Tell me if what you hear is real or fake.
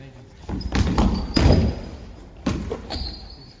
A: real